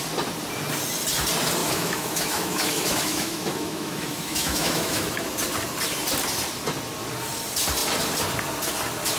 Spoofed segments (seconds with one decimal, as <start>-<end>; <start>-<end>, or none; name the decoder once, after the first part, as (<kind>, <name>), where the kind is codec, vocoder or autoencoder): 1.6-5.3 (autoencoder, DAC-VAE)